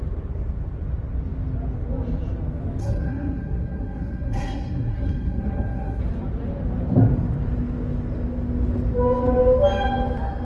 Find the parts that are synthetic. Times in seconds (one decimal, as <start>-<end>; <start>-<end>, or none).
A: 2.8-6.0